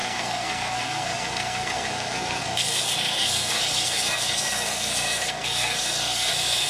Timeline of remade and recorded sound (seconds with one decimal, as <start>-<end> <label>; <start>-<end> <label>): 0.0-6.7 remade